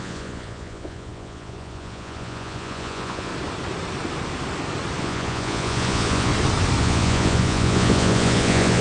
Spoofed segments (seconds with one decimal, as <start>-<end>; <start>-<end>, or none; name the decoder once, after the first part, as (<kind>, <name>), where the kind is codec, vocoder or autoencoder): 0.0-3.3 (vocoder, Vocos); 5.0-6.3; 6.8-8.8